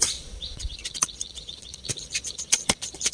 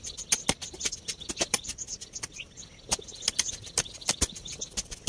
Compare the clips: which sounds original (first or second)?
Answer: second